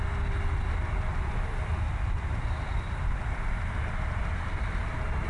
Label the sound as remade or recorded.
recorded